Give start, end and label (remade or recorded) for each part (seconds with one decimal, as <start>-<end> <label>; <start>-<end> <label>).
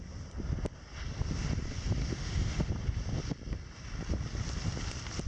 0.0-2.0 recorded; 2.0-2.7 remade; 2.7-5.3 recorded